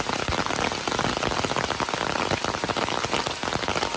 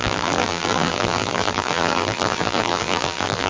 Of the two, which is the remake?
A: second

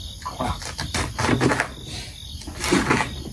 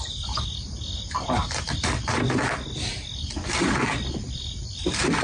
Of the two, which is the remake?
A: second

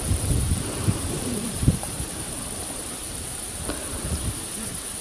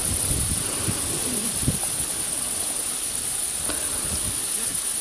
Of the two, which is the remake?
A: first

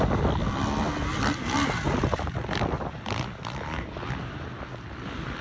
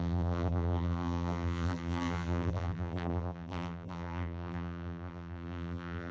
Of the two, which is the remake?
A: second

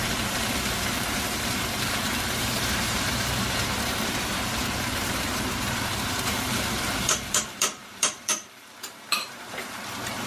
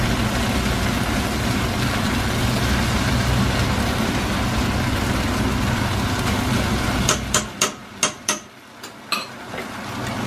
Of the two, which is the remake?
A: first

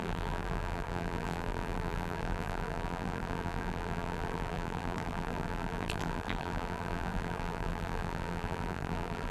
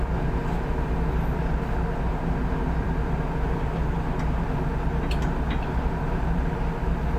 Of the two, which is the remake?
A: first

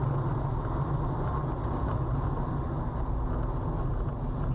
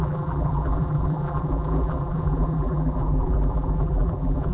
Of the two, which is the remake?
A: second